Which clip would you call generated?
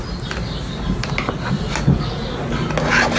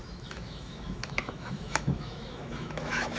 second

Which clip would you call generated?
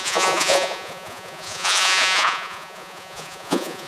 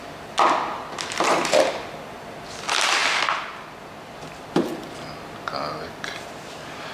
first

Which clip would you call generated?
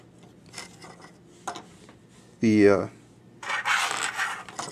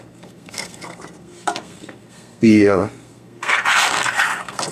second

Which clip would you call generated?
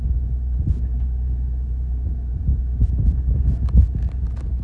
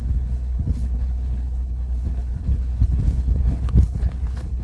second